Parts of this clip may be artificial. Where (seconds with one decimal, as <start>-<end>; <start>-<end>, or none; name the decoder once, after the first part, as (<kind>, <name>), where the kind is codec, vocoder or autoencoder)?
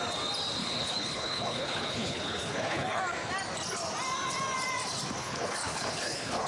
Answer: 0.6-3.0 (codec, HILCodec); 5.2-6.5